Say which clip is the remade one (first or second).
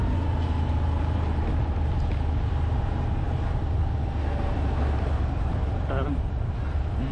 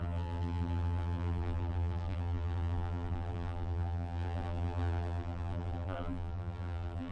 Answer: second